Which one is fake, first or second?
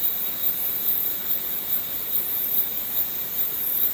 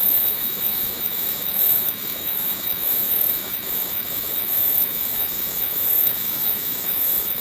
second